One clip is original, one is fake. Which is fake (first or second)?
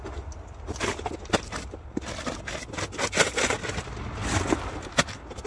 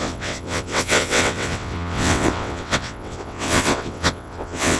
second